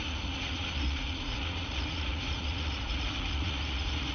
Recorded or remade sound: remade